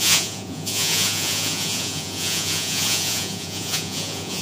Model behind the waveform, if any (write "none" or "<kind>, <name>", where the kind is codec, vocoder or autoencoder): vocoder, Vocos